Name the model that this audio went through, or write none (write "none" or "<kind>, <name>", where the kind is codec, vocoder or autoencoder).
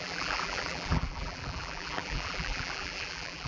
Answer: vocoder, BigVGAN v2